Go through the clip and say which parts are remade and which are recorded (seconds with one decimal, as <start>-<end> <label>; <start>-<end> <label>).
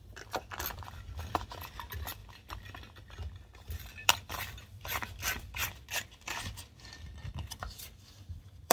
0.0-2.2 remade; 2.2-3.4 recorded; 3.4-8.7 remade